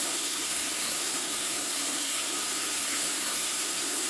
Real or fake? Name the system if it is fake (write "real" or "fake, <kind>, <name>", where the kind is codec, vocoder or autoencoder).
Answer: fake, codec, SNAC